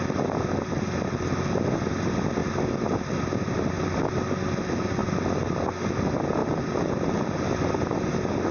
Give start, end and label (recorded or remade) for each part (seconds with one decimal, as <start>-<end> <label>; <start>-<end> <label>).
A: 0.0-8.5 recorded